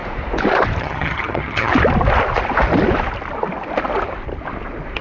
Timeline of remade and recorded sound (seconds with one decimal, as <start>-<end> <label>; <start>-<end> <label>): 0.0-0.8 recorded; 0.8-1.7 remade; 1.7-5.0 recorded